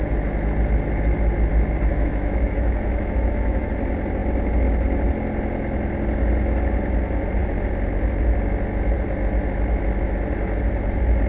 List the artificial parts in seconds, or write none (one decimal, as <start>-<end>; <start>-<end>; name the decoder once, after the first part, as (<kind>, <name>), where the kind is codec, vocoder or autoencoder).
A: 1.9-3.7 (autoencoder, DAC-VAE)